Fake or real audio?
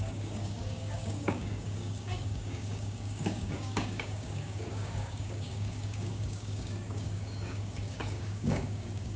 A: fake